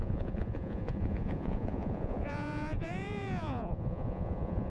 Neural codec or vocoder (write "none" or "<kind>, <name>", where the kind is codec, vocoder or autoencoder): vocoder, Vocos